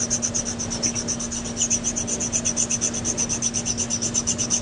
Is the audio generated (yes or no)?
no